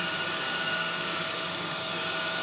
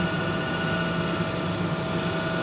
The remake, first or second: first